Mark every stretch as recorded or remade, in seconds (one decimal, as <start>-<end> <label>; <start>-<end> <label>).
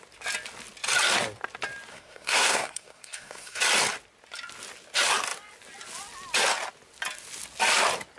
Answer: 0.0-1.9 recorded; 1.9-3.6 remade; 3.6-8.2 recorded